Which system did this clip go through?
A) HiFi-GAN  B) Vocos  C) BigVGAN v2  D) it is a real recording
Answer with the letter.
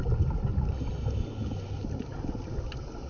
D